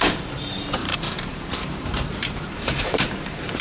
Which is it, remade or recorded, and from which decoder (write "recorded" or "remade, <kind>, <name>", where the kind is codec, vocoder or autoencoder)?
remade, vocoder, BigVGAN v2